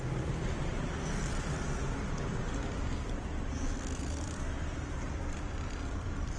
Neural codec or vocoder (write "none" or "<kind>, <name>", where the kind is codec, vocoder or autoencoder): none